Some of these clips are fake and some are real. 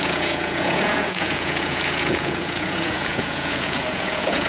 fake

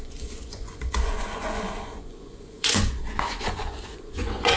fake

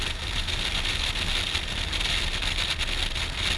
real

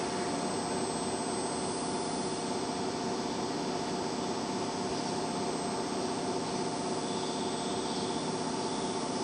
real